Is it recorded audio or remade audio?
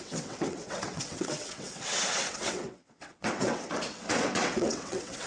remade